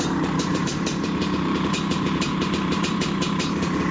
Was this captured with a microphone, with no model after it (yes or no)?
no